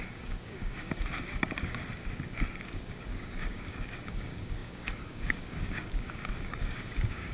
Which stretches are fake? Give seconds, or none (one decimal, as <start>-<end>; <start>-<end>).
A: 0.0-1.8; 2.6-7.3